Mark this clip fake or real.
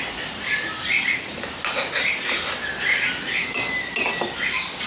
real